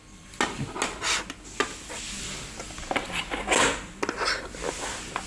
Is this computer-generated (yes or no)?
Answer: no